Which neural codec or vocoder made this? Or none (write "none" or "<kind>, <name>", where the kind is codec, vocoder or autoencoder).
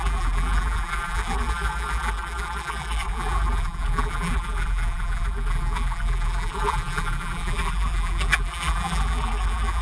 vocoder, BigVGAN v2